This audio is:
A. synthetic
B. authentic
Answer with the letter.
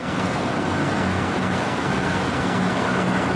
A